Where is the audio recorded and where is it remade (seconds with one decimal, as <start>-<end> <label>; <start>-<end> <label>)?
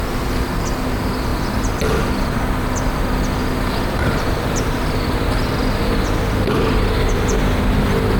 0.0-8.2 recorded